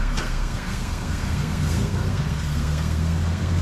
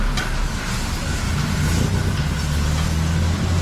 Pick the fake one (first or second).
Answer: first